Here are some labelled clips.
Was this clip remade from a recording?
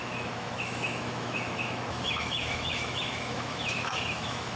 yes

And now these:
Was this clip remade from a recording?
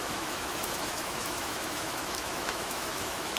yes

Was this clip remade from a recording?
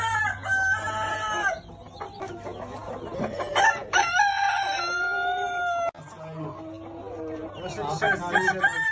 no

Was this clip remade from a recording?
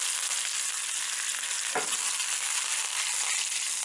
no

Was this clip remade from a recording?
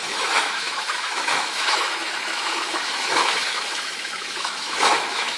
yes